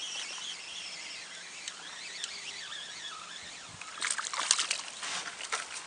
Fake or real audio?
real